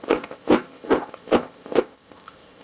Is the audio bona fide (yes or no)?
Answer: no